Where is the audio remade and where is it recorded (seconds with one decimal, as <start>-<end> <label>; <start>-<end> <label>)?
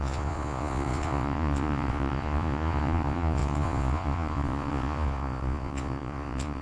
0.0-6.6 remade